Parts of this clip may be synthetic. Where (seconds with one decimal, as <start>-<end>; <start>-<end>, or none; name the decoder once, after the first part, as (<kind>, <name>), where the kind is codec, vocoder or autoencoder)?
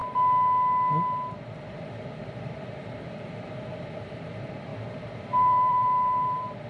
1.8-4.7 (vocoder, BigVGAN v2); 5.2-6.7